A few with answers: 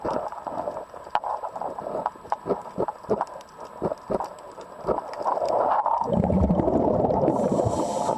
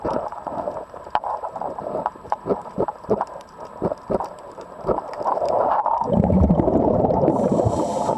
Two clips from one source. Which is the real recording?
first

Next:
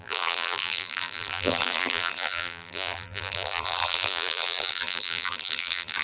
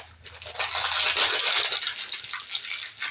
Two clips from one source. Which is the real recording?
second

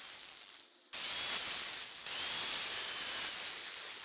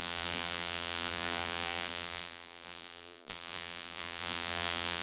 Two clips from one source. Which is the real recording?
first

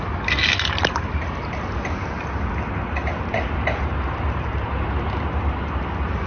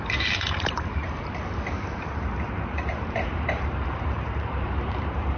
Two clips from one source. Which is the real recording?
first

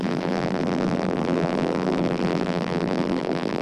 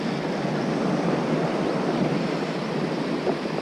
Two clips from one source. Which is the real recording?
second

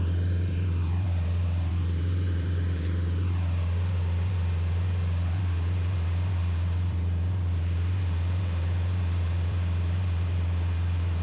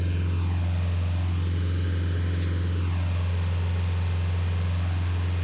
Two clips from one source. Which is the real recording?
second